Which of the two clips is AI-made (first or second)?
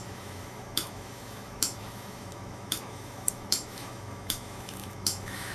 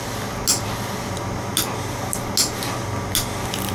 first